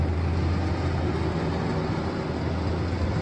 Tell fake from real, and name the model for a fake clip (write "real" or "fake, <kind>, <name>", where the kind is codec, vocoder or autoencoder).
real